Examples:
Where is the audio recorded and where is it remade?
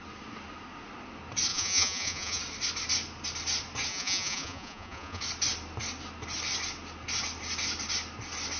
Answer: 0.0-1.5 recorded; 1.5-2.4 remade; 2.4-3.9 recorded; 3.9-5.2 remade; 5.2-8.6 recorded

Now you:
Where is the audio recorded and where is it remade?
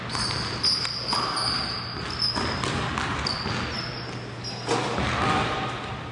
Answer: 0.0-6.1 recorded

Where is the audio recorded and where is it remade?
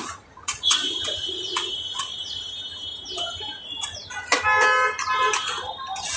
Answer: 0.0-2.4 remade; 2.4-6.2 recorded